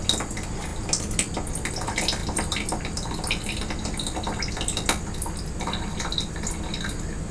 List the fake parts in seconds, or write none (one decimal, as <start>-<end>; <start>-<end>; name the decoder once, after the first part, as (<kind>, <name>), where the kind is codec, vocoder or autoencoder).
none